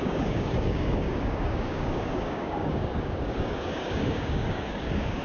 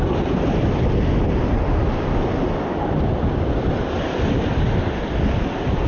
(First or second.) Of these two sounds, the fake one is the first